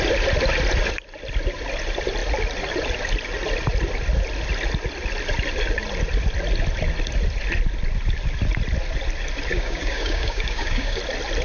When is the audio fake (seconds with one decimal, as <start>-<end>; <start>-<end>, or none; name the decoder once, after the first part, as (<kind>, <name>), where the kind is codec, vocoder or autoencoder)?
9.5-11.0 (codec, DAC)